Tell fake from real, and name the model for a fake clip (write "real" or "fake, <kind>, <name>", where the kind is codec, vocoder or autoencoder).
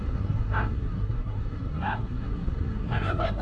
fake, codec, SNAC